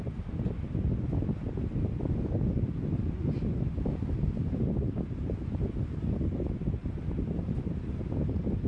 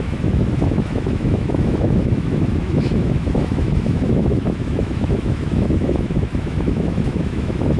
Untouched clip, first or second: first